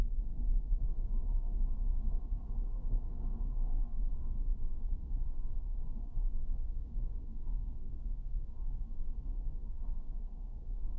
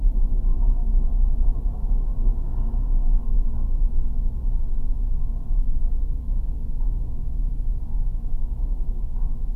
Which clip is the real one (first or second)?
second